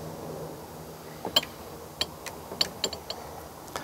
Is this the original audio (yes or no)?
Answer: yes